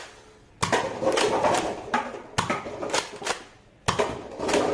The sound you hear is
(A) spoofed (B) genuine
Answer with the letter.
B